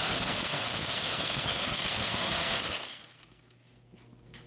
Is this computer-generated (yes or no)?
yes